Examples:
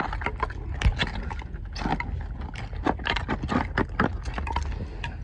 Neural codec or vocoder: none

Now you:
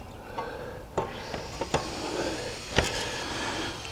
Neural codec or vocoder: none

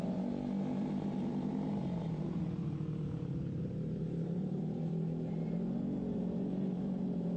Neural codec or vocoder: vocoder, BigVGAN v2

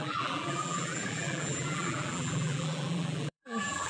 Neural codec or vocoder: vocoder, BigVGAN v2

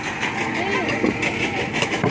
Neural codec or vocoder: none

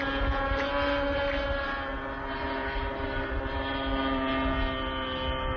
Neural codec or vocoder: none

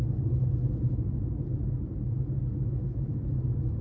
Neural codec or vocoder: none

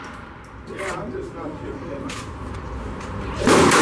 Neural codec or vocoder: vocoder, BigVGAN v2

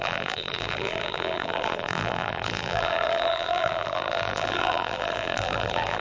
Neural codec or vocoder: vocoder, BigVGAN v2